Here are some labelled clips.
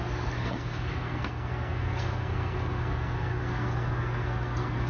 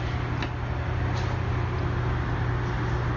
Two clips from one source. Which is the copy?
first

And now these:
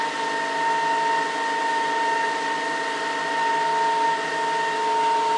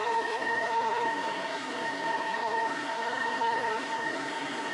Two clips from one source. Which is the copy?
second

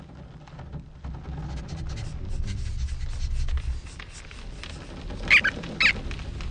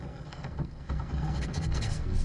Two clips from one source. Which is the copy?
second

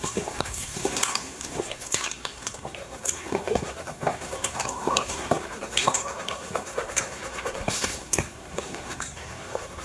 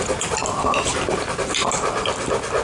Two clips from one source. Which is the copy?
first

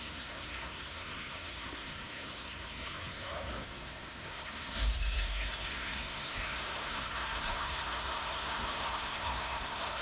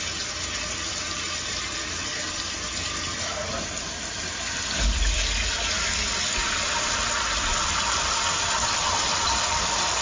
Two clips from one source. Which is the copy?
first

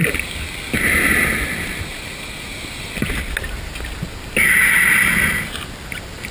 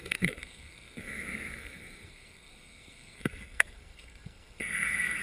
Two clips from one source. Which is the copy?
second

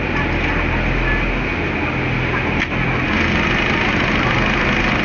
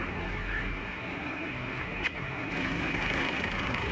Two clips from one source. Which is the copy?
second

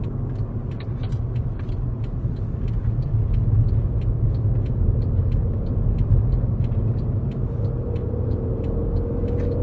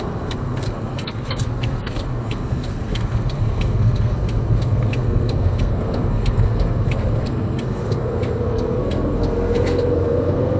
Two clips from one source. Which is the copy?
second